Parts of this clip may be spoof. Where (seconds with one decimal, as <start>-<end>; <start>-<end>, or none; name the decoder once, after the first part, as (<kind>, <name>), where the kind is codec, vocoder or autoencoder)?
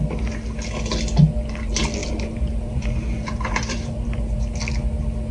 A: 2.0-4.6 (vocoder, BigVGAN v2)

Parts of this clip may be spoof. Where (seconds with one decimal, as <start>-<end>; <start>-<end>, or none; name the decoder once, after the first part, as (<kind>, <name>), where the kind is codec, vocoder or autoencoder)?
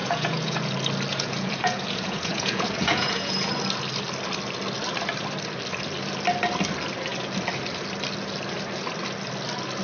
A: 0.0-0.7 (vocoder, Vocos); 1.1-3.5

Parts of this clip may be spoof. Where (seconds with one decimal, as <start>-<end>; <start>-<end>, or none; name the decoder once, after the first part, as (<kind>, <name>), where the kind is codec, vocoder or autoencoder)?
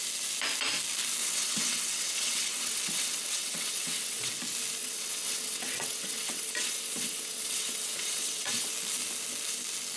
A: 1.2-4.3 (vocoder, WaveNeXt); 4.8-8.7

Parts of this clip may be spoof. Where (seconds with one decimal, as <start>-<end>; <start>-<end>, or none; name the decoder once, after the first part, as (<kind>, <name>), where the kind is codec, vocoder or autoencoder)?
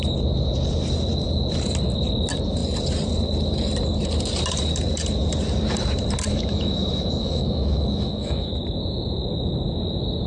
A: 6.3-8.5 (autoencoder, DAC-VAE)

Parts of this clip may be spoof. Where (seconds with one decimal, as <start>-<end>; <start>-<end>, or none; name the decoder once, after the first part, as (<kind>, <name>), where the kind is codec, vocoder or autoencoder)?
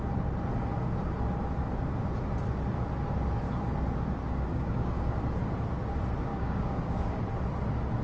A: 4.2-5.2 (codec, DAC); 6.3-7.2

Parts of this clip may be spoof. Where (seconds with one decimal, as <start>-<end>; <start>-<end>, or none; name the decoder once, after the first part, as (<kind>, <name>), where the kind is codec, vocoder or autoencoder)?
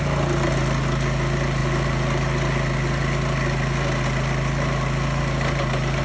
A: none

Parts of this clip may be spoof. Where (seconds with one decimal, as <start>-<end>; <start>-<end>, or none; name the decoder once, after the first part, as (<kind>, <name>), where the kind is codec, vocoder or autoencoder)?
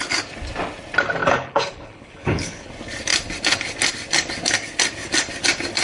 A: 1.2-2.7 (codec, HILCodec)